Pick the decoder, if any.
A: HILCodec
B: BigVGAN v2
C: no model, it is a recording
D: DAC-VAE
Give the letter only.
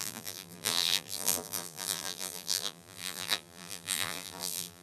B